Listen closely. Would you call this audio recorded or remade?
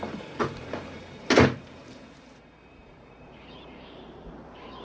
remade